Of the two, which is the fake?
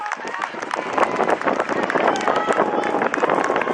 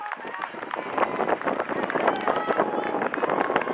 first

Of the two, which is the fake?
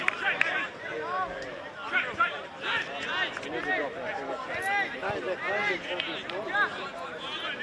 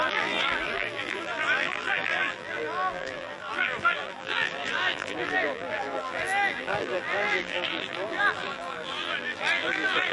second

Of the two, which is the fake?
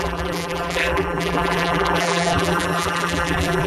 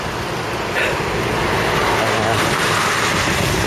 first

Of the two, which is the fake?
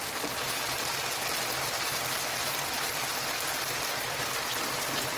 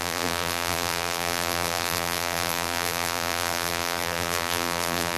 second